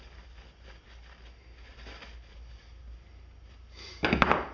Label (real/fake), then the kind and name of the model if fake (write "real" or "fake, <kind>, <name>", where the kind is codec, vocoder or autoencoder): real